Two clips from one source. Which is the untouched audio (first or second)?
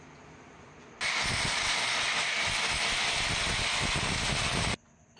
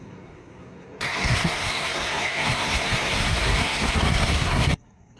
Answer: first